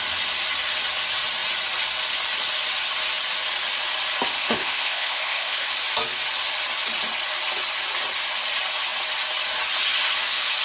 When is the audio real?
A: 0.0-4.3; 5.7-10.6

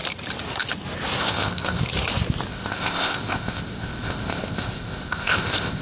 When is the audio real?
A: 0.0-1.2; 1.8-2.5

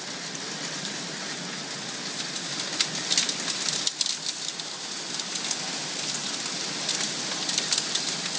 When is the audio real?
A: 0.0-8.4

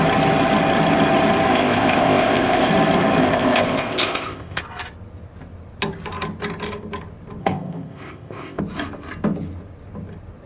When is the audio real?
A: 0.0-1.5; 2.7-3.2; 4.6-7.4; 8.6-10.5

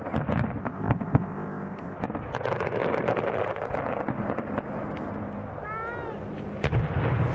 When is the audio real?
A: 0.0-0.6; 2.0-7.3